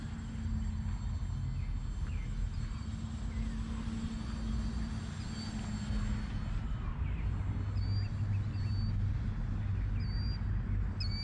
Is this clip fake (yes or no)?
no